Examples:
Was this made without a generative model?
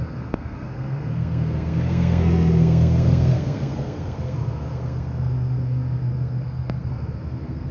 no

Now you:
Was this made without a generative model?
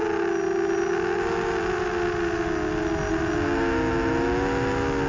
yes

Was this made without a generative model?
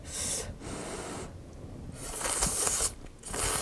yes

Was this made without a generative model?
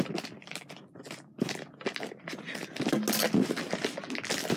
yes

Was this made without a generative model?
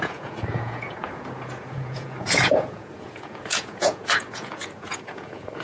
no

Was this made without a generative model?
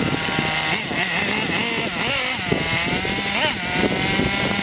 yes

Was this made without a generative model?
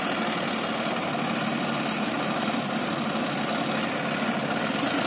yes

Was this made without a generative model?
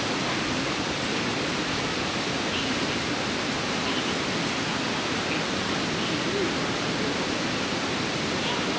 yes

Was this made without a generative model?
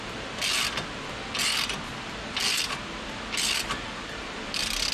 yes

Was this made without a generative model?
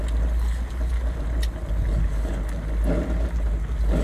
yes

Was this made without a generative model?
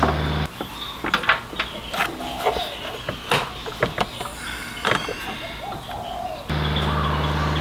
yes